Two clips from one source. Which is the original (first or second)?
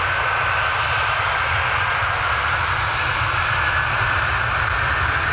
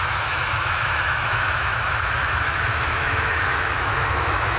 first